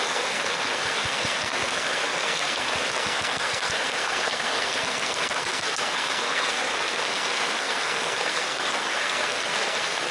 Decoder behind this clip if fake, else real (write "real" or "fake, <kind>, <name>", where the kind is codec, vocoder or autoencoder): fake, codec, SNAC